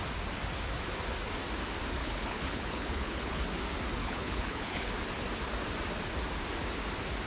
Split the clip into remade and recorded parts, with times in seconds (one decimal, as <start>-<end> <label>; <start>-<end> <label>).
0.0-2.0 recorded; 2.0-3.4 remade; 3.4-4.0 recorded; 4.0-4.9 remade; 4.9-7.3 recorded